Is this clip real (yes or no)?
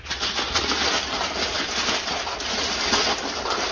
yes